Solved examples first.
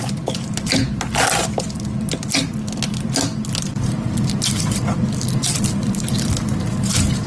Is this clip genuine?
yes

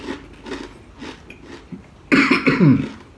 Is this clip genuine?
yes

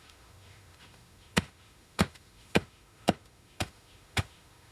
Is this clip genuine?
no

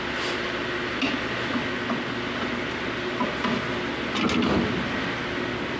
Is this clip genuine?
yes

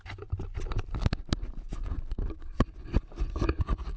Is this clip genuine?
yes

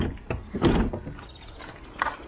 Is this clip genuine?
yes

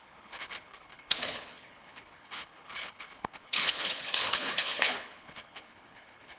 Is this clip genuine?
no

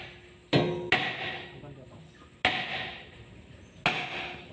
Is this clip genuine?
yes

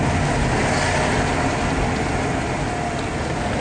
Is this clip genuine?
yes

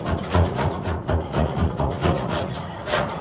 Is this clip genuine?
no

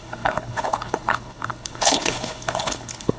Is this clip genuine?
no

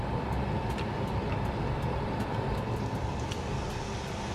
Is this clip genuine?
yes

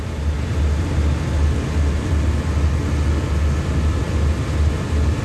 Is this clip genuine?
yes